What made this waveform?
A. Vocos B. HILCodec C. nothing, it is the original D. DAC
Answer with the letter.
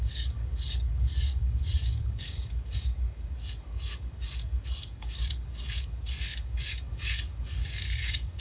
D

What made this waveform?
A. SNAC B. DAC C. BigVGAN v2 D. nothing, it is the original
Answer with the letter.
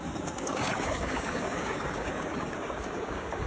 B